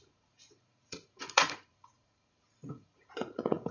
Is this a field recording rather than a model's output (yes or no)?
no